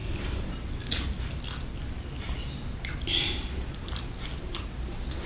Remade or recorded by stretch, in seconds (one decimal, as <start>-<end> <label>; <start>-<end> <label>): 0.0-0.5 remade; 0.5-5.3 recorded

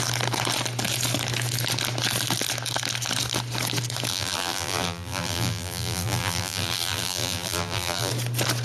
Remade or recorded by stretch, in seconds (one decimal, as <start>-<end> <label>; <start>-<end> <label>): 0.0-4.1 recorded; 4.1-8.1 remade; 8.1-8.6 recorded

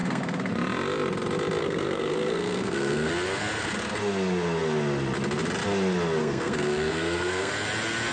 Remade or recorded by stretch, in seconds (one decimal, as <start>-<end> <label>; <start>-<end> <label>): 0.0-0.5 remade; 0.5-1.6 recorded; 1.6-3.1 remade; 3.1-6.2 recorded; 6.2-7.5 remade; 7.5-8.1 recorded

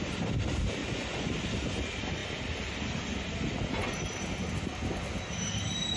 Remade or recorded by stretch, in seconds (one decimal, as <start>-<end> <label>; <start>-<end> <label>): 0.0-0.8 recorded; 0.8-1.3 remade; 1.3-6.0 recorded

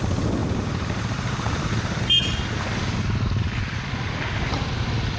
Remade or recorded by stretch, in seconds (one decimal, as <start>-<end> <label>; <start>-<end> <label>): 0.0-0.4 recorded; 0.4-2.6 remade; 2.6-5.2 recorded